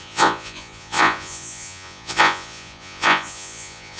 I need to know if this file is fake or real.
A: fake